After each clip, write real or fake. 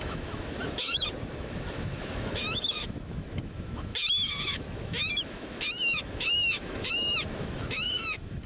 fake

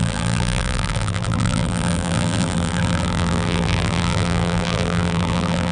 fake